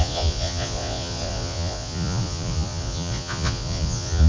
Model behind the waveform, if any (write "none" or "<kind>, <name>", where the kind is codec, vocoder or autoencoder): vocoder, Vocos